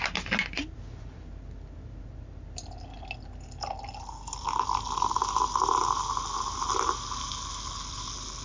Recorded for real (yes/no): yes